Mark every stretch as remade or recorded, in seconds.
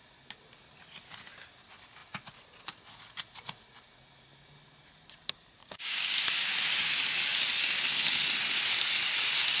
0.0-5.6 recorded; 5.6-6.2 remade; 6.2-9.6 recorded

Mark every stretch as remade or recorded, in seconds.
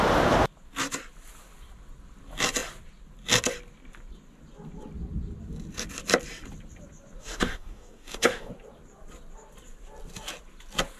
0.0-7.2 recorded; 7.2-8.5 remade; 8.5-11.0 recorded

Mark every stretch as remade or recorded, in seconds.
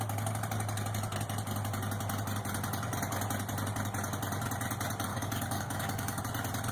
0.0-5.1 recorded; 5.1-6.2 remade; 6.2-6.7 recorded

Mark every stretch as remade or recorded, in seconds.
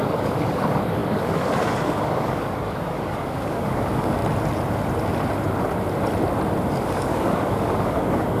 0.0-4.2 remade; 4.2-6.7 recorded; 6.7-8.4 remade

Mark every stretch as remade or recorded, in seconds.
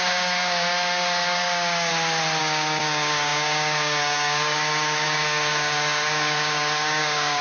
0.0-1.9 remade; 1.9-2.4 recorded; 2.4-7.4 remade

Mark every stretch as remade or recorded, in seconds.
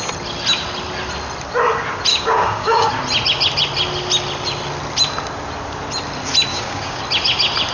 0.0-2.1 recorded; 2.1-2.9 remade; 2.9-6.5 recorded; 6.5-7.0 remade; 7.0-7.7 recorded